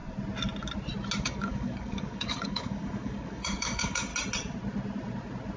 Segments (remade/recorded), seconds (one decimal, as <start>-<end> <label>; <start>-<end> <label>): 0.0-1.2 recorded; 1.2-4.1 remade; 4.1-5.6 recorded